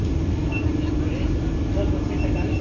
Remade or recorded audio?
recorded